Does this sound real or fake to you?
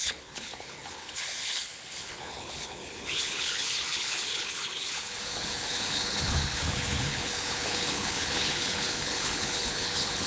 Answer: fake